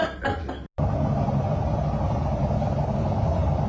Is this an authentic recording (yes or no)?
yes